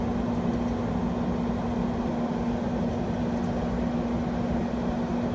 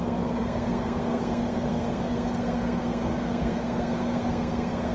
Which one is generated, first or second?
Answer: second